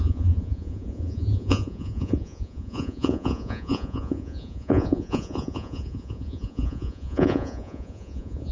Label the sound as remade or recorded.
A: remade